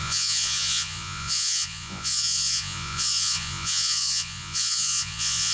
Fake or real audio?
fake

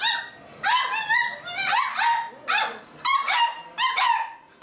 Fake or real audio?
real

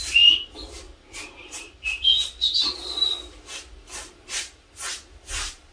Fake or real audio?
real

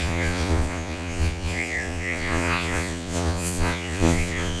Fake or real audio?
fake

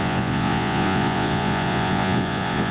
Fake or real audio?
fake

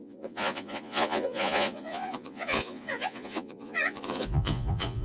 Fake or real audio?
fake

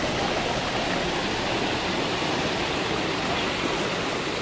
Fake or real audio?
real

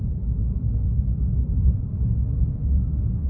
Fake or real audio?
real